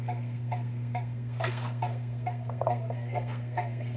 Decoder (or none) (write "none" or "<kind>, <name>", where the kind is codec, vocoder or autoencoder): codec, SNAC